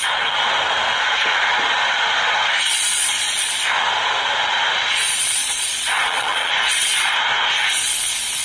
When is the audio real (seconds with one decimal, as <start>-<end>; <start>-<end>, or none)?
0.0-2.9; 3.6-5.4; 6.5-8.4